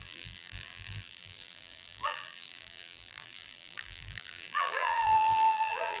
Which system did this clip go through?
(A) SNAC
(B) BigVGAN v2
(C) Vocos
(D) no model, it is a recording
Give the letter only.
B